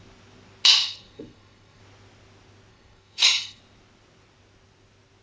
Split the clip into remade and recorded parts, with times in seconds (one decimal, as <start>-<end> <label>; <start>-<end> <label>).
0.0-0.8 recorded; 0.8-1.8 remade; 1.8-2.7 recorded; 2.7-3.6 remade; 3.6-5.2 recorded